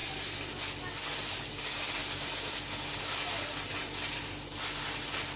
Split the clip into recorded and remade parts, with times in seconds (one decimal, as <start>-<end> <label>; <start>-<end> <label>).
0.0-0.8 remade; 0.8-2.0 recorded; 2.0-4.1 remade; 4.1-5.4 recorded